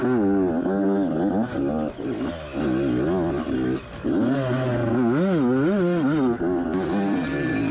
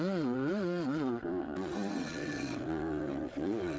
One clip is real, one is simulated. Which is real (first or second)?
first